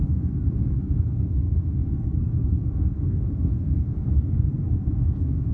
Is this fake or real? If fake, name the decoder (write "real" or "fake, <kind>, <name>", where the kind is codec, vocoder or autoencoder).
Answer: fake, codec, SNAC